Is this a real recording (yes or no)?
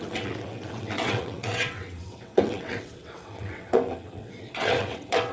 no